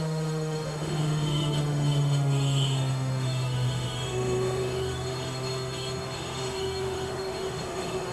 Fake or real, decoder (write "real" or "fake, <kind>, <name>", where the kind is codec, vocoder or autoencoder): fake, autoencoder, DAC-VAE